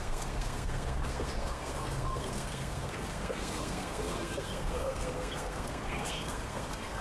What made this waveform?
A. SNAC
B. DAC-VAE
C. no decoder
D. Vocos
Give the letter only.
A